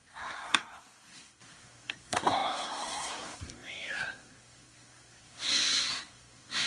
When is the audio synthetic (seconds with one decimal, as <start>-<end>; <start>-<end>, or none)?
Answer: 0.0-6.7